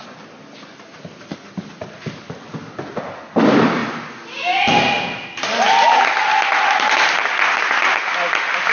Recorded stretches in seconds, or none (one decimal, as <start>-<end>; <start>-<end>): 0.0-8.7